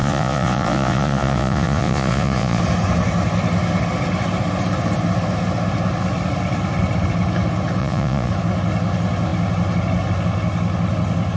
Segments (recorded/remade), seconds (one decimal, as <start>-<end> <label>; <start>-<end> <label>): 0.0-2.6 remade; 2.6-7.8 recorded; 7.8-8.3 remade; 8.3-11.4 recorded